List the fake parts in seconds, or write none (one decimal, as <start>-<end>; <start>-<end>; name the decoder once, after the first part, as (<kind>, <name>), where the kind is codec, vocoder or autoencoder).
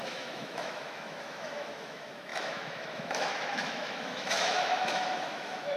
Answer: 0.0-5.8 (autoencoder, DAC-VAE)